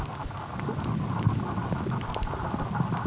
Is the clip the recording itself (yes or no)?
no